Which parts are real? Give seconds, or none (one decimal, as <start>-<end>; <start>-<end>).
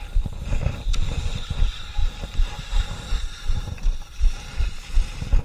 0.0-2.0